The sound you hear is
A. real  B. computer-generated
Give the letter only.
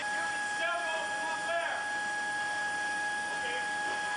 A